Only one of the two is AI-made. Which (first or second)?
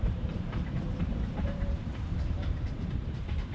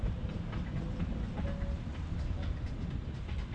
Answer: first